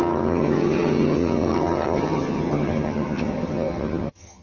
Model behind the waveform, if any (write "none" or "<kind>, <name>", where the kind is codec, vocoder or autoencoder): vocoder, HiFi-GAN